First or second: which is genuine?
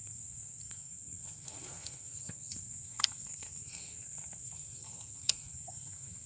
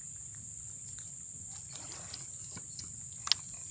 second